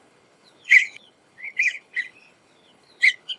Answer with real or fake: fake